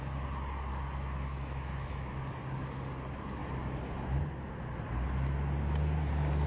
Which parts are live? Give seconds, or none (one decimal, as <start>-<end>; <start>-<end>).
0.0-0.7; 2.1-6.5